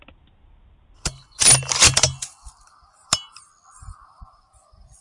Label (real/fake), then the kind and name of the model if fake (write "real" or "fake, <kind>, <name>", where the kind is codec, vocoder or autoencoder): real